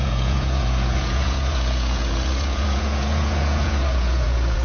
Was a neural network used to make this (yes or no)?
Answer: yes